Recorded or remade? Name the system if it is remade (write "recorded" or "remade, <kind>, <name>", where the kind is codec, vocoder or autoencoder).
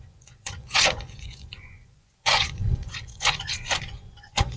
remade, vocoder, Vocos